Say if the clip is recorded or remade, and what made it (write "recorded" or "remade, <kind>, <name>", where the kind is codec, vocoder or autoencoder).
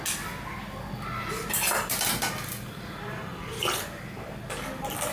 recorded